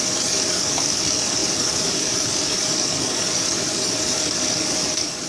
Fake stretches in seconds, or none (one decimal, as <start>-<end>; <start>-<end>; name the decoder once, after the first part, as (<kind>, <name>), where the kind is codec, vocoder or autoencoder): 0.0-5.3 (codec, DAC)